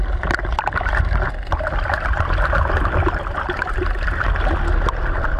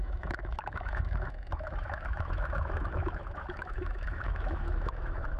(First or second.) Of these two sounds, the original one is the first